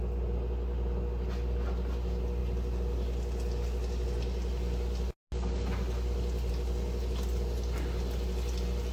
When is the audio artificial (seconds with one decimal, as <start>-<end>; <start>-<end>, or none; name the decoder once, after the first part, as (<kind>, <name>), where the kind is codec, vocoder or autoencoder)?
none